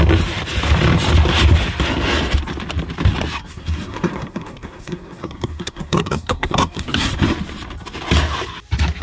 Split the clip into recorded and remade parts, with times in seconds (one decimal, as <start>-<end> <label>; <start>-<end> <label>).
0.0-3.4 recorded; 3.4-7.1 remade; 7.1-9.0 recorded